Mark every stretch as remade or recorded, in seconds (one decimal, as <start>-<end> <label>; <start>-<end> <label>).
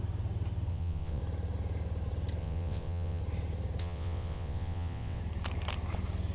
0.0-0.7 recorded; 0.7-1.2 remade; 1.2-2.4 recorded; 2.4-3.2 remade; 3.2-3.8 recorded; 3.8-5.2 remade; 5.2-6.3 recorded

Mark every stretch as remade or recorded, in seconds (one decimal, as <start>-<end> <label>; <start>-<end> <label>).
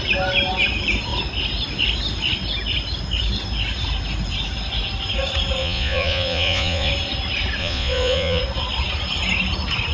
0.0-5.6 recorded; 5.6-6.9 remade; 6.9-7.6 recorded; 7.6-8.4 remade; 8.4-9.9 recorded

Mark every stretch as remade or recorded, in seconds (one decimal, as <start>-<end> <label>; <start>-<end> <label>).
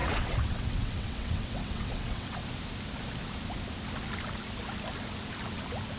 0.0-2.4 remade; 2.4-6.0 recorded